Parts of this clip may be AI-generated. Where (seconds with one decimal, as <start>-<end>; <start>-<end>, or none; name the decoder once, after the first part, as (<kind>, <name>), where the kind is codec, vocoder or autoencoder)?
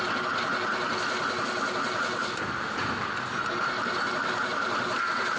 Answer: none